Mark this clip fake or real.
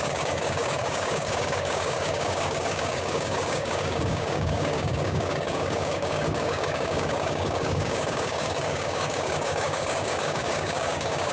fake